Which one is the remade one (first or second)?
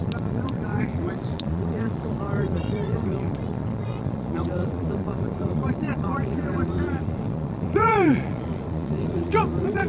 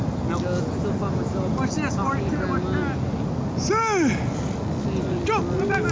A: first